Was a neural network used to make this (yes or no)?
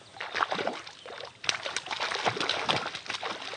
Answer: no